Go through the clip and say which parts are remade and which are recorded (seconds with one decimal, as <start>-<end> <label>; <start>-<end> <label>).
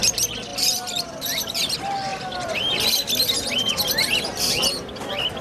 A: 0.0-0.5 recorded; 0.5-1.6 remade; 1.6-5.4 recorded